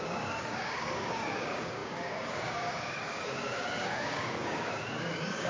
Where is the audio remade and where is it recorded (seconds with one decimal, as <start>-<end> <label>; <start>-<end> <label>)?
0.0-5.5 remade